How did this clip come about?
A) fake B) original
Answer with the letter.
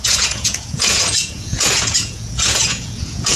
A